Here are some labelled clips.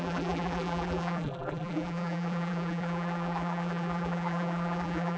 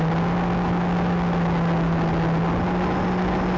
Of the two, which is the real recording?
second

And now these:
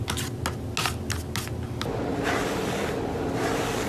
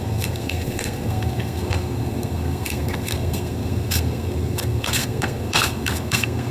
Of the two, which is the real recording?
first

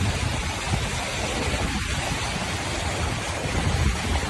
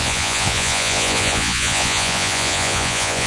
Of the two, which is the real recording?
first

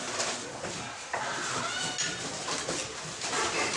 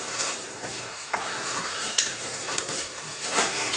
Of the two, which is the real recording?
first